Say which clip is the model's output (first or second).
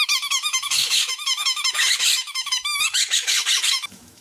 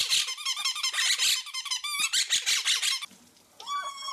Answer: first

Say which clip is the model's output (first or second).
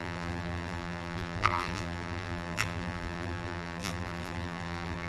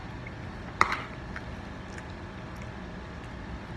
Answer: first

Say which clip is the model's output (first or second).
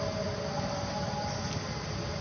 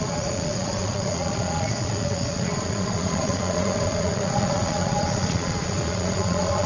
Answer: second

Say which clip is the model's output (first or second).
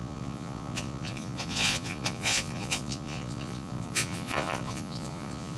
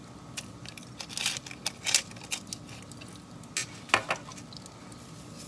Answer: first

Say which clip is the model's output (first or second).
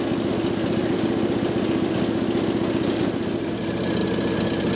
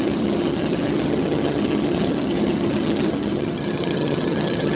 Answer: second